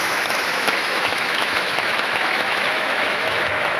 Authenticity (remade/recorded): remade